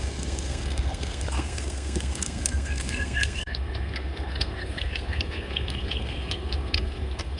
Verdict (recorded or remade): remade